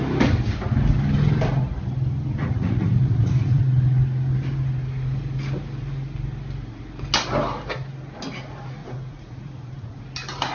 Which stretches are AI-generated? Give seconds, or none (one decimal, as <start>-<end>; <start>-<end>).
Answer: 2.4-3.6; 8.8-10.0

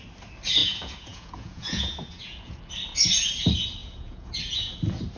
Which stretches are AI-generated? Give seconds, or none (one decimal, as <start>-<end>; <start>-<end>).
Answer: 0.6-2.6; 3.8-4.7